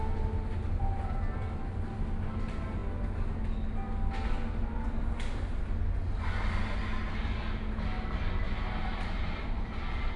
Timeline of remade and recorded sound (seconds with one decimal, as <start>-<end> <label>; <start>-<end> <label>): 0.0-10.2 recorded